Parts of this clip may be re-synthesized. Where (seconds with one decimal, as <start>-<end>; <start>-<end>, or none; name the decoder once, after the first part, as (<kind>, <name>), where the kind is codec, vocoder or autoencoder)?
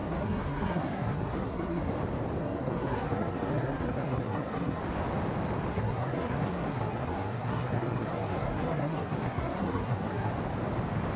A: 0.0-1.9 (codec, SNAC); 2.4-4.8; 5.7-10.3